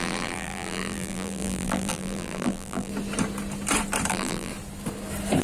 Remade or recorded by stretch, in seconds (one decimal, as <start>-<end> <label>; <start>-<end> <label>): 0.0-2.9 remade; 2.9-4.1 recorded; 4.1-4.5 remade; 4.5-5.4 recorded